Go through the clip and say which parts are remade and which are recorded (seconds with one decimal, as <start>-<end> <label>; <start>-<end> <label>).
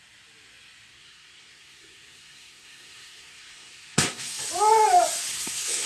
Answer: 0.0-0.9 recorded; 0.9-4.4 remade; 4.4-5.3 recorded; 5.3-5.9 remade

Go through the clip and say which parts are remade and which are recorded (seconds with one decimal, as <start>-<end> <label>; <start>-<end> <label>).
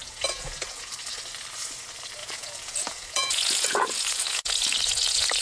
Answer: 0.0-0.9 remade; 0.9-2.2 recorded; 2.2-5.4 remade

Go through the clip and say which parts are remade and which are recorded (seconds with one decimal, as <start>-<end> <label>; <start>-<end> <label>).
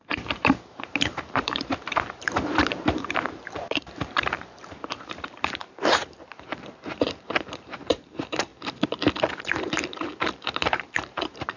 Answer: 0.0-8.5 remade; 8.5-9.4 recorded; 9.4-11.6 remade